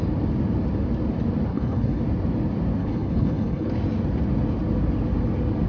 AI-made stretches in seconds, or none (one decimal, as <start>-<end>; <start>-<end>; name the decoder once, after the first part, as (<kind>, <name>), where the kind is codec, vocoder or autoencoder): 1.5-2.0 (codec, HILCodec); 2.8-3.7